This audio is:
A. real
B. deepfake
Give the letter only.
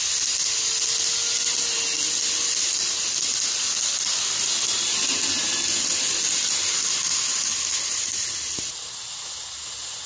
A